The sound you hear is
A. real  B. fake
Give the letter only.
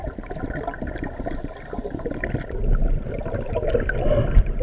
A